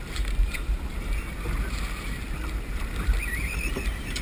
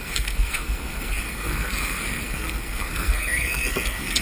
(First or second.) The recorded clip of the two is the first